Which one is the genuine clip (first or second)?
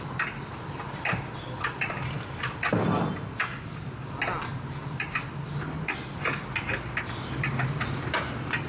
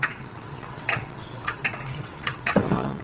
first